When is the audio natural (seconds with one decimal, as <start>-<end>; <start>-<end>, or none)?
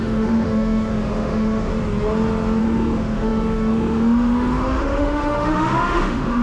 1.7-2.6